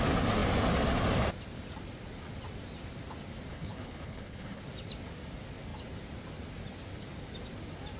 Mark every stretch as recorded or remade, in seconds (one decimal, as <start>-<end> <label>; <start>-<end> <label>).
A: 0.0-3.5 recorded; 3.5-4.6 remade; 4.6-8.0 recorded